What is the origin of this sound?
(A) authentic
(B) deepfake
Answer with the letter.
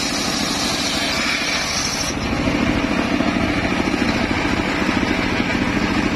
A